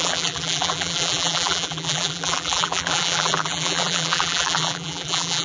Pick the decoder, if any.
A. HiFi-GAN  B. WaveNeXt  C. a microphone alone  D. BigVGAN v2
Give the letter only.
D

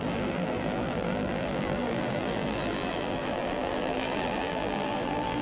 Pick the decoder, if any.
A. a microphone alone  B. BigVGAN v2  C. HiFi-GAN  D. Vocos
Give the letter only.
B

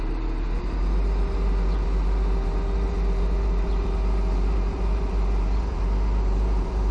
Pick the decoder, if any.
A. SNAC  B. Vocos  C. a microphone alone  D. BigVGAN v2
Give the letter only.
D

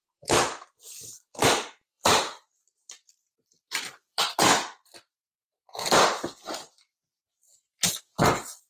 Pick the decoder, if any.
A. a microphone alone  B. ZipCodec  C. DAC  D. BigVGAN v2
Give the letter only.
D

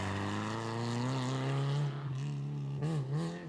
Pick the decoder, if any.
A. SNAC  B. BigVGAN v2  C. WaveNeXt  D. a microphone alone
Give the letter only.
D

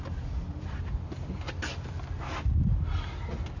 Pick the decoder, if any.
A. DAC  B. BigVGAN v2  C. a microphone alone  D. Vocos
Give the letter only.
C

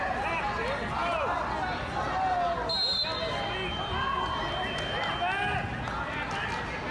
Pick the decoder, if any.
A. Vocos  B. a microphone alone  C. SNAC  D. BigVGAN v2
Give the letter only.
B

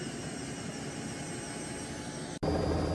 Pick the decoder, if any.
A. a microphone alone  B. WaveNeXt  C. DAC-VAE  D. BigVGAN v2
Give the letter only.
A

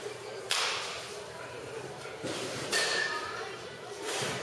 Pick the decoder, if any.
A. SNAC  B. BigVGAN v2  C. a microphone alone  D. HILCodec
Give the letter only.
B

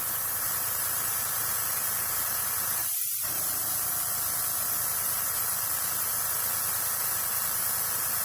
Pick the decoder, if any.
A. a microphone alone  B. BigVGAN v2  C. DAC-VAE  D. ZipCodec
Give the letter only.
A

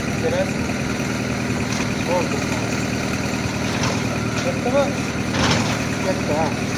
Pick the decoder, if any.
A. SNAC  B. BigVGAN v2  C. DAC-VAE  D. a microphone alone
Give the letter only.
D